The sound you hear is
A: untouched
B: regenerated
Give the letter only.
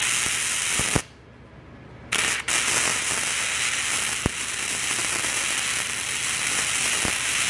A